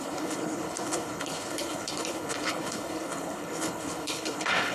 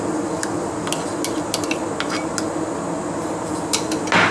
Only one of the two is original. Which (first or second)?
second